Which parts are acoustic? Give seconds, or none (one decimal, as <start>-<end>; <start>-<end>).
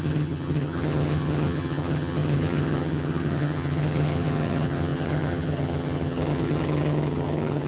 none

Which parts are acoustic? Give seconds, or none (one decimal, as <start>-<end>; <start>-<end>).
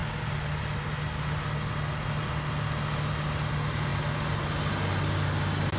0.0-5.8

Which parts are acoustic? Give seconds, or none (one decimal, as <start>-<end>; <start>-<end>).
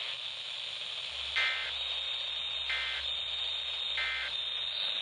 0.0-5.0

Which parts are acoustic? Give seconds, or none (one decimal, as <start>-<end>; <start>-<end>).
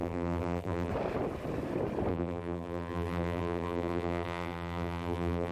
0.9-2.1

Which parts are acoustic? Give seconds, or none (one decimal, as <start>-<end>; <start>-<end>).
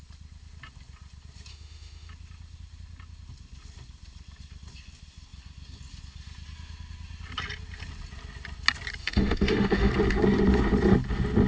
0.0-1.5; 2.1-9.0; 9.9-11.5